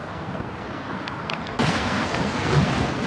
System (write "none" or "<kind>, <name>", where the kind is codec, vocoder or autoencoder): codec, SNAC